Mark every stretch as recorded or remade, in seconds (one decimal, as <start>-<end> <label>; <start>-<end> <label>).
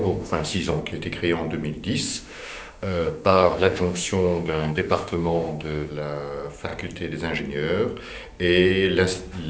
0.0-0.8 remade; 0.8-2.1 recorded; 2.1-5.9 remade; 5.9-9.5 recorded